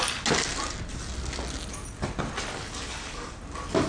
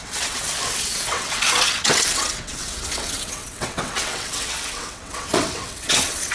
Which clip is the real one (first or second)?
first